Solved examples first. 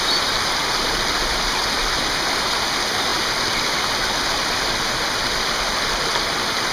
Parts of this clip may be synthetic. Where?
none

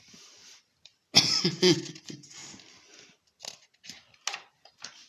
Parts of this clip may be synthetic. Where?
0.0-0.9 (vocoder, BigVGAN v2); 2.0-2.4; 4.5-5.1